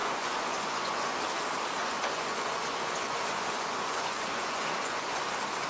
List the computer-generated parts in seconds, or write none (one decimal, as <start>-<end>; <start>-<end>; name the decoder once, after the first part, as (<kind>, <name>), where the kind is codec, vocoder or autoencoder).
0.0-1.2 (vocoder, Vocos); 1.8-5.2